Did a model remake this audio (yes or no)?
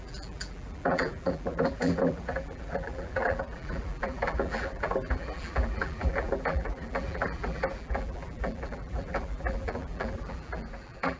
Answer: yes